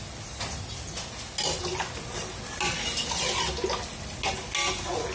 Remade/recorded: recorded